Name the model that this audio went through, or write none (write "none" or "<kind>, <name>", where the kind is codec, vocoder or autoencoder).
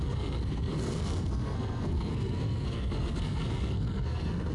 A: codec, SNAC